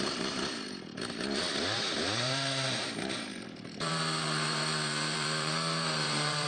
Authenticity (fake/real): fake